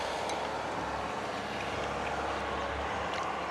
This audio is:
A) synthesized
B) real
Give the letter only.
B